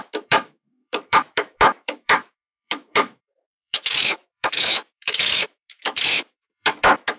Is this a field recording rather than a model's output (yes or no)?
no